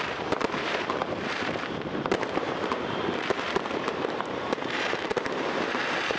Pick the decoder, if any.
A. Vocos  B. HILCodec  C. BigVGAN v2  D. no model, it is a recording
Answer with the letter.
C